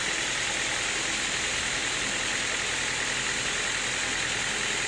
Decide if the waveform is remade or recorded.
recorded